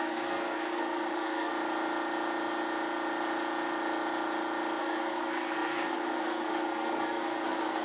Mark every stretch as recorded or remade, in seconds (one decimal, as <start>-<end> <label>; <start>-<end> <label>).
0.0-1.5 remade; 1.5-4.8 recorded; 4.8-7.8 remade